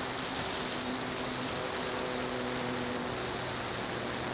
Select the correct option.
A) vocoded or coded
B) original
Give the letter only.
B